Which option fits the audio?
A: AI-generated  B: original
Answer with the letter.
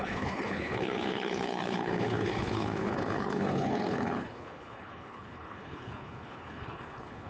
A